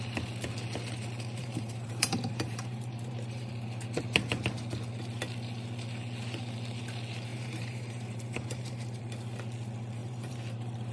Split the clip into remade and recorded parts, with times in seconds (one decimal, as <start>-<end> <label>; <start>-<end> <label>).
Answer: 0.0-1.4 recorded; 1.4-3.5 remade; 3.5-7.3 recorded; 7.3-9.0 remade; 9.0-10.0 recorded; 10.0-10.9 remade